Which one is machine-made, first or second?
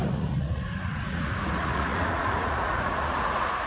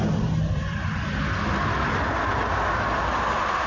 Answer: first